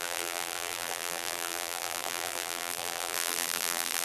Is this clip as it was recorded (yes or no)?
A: no